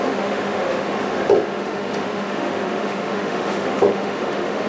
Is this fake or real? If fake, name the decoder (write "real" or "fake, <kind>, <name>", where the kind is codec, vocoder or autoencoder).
fake, autoencoder, DAC-VAE